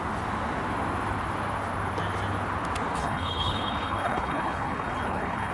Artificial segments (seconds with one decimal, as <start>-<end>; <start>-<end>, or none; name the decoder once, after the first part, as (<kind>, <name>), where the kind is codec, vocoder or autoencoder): 3.0-5.5 (codec, HILCodec)